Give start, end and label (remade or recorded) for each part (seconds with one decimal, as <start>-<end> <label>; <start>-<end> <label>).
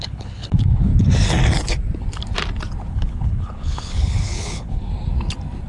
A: 0.0-0.9 remade; 0.9-2.9 recorded; 2.9-4.9 remade; 4.9-5.7 recorded